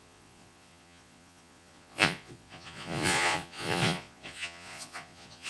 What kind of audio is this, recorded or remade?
remade